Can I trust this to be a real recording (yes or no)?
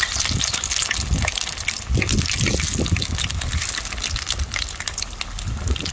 yes